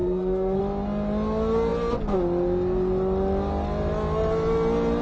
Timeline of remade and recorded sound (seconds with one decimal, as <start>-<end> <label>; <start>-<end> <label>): 0.0-0.6 remade; 0.6-5.0 recorded